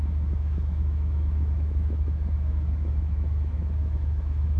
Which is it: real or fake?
fake